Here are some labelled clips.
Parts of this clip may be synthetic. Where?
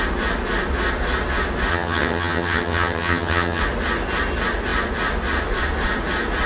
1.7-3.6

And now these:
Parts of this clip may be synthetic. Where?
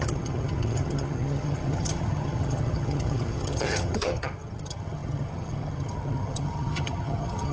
0.0-7.5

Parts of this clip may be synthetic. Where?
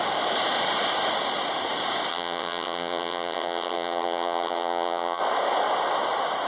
2.1-5.2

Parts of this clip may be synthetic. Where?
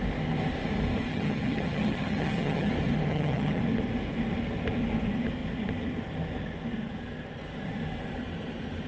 1.1-2.7; 3.1-3.6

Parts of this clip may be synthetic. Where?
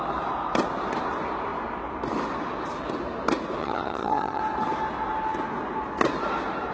3.6-4.4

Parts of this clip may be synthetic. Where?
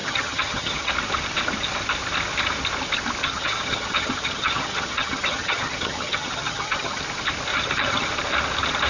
0.0-0.9; 3.2-7.0; 7.5-8.1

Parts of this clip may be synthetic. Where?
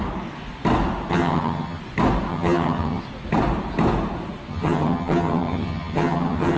1.1-1.8; 2.3-3.0; 4.5-6.6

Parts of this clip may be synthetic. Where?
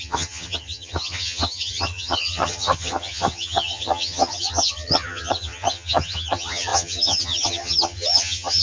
0.0-8.6